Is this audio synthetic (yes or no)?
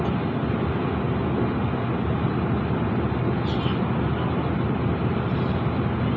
no